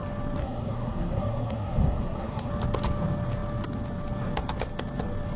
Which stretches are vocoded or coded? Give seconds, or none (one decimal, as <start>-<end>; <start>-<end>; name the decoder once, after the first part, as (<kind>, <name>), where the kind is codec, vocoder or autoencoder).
0.4-2.5 (codec, SNAC)

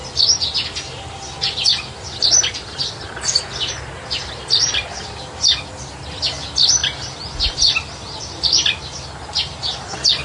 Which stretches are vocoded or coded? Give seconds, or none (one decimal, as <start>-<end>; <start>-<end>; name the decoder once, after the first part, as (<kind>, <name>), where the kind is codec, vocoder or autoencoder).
none

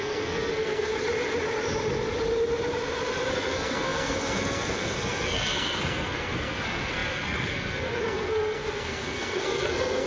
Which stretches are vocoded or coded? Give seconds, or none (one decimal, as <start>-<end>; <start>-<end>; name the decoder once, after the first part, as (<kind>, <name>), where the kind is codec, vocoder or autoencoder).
0.0-0.9 (codec, SNAC); 3.3-10.1

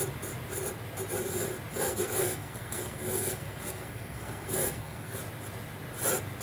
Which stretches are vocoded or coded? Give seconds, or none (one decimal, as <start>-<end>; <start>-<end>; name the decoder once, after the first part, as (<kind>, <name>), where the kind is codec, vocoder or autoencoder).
1.7-5.2 (codec, SNAC)

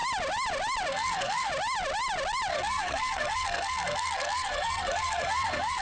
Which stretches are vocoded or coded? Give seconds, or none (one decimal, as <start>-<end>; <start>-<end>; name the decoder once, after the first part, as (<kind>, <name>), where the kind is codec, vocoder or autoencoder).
0.9-1.5 (codec, SNAC); 2.5-5.8

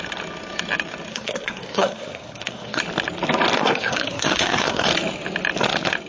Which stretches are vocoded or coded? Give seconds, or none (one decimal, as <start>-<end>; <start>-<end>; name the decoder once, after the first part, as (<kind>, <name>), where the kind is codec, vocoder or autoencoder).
1.1-2.8 (codec, SNAC); 3.6-4.9